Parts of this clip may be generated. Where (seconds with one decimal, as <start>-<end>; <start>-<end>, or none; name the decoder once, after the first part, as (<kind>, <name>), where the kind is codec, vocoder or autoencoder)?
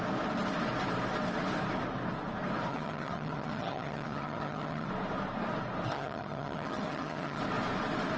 2.7-4.9 (vocoder, HiFi-GAN); 5.9-7.4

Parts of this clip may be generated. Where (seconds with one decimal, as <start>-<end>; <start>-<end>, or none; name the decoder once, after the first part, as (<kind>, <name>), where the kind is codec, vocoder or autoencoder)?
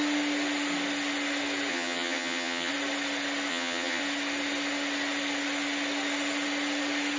1.7-2.7 (vocoder, HiFi-GAN); 3.5-4.0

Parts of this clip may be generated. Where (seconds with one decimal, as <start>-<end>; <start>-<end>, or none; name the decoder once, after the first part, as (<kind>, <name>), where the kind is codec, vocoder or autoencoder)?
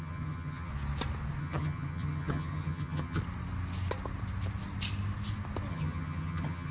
0.0-0.7 (vocoder, HiFi-GAN); 1.4-3.2; 5.7-6.7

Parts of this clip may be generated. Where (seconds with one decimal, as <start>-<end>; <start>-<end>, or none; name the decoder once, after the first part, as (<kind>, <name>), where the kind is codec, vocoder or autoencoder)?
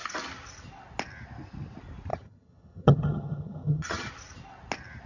2.1-4.1 (vocoder, HiFi-GAN)